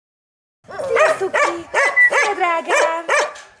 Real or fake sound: real